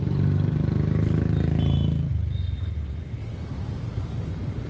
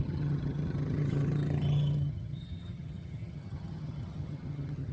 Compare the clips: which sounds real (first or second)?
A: first